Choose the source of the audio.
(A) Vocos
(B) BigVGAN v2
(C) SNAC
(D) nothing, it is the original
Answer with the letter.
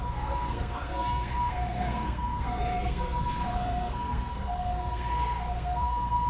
C